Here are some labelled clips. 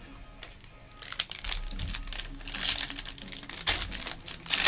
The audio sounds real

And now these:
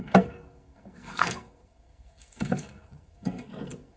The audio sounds fake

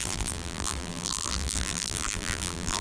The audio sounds fake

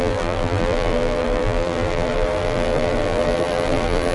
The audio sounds fake